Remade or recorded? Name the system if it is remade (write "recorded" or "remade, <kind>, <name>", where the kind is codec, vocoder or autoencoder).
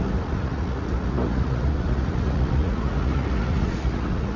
remade, vocoder, Vocos